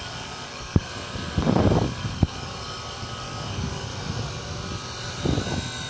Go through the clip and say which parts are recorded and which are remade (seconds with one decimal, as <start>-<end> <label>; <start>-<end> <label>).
0.0-3.9 remade; 3.9-5.9 recorded